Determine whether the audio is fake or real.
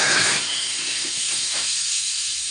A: fake